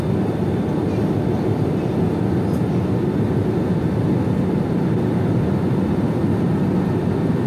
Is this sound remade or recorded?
recorded